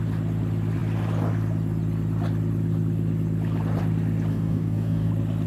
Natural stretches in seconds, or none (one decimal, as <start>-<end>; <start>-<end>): 0.0-4.3; 5.1-5.5